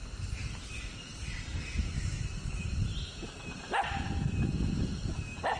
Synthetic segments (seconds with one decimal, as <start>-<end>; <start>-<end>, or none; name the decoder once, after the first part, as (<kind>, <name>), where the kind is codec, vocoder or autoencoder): 1.5-4.1 (vocoder, BigVGAN v2)